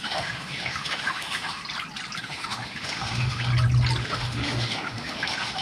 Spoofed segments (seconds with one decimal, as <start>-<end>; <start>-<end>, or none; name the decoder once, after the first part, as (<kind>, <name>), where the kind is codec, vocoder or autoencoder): 0.0-1.6 (autoencoder, DAC-VAE); 2.2-3.5; 4.0-5.6